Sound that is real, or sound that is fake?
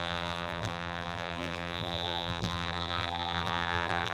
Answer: fake